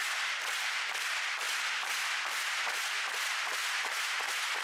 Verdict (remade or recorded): recorded